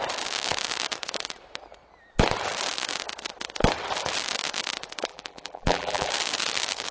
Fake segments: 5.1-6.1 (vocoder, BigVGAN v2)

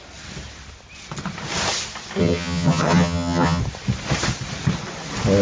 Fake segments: 2.2-3.6 (vocoder, HiFi-GAN)

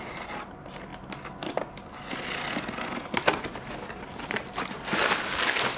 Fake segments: none

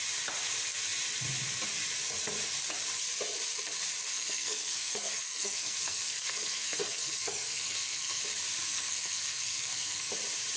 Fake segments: 4.1-8.2 (codec, SNAC); 8.6-10.1

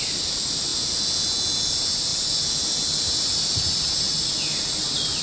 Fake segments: none

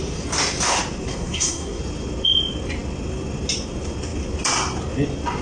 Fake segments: 1.1-1.8 (codec, SNAC)

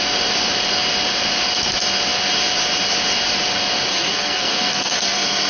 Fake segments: 3.9-5.5 (codec, SNAC)

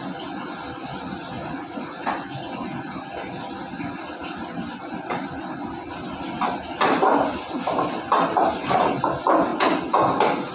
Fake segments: 1.4-2.1 (vocoder, Vocos)